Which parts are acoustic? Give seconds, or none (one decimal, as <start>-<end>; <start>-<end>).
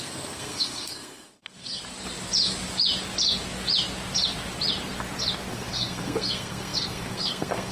1.8-5.5